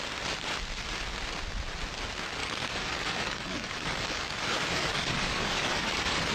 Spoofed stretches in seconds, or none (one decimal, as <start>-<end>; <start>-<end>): 2.4-6.3

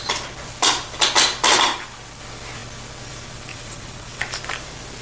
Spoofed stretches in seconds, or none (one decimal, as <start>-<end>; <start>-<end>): 3.5-4.2

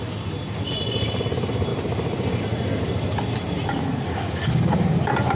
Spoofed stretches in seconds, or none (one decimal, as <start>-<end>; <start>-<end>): none

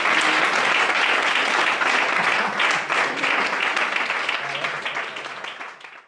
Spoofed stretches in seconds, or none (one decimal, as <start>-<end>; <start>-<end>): none

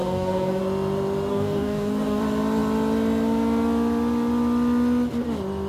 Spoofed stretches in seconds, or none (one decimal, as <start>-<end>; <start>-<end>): 0.0-0.6; 1.3-2.2

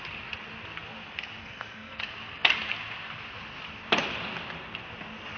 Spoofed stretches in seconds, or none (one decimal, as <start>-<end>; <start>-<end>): 1.4-2.0